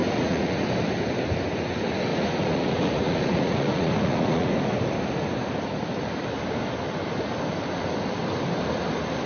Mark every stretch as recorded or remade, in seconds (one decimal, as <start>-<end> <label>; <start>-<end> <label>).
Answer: 0.0-0.6 remade; 0.6-2.1 recorded; 2.1-4.5 remade; 4.5-9.3 recorded